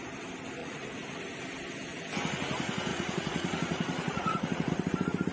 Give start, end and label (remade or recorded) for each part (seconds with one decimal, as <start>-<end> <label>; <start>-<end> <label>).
0.0-0.6 recorded; 0.6-1.2 remade; 1.2-2.9 recorded; 2.9-4.7 remade; 4.7-5.3 recorded